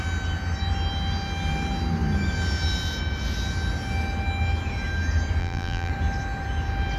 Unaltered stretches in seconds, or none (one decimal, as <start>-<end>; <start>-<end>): 0.0-5.4; 5.9-7.0